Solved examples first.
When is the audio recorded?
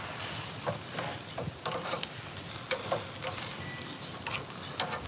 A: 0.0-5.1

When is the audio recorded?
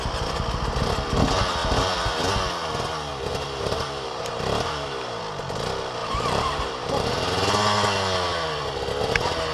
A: 0.0-3.1; 5.2-6.0; 7.1-9.5